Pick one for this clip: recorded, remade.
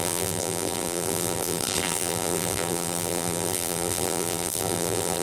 remade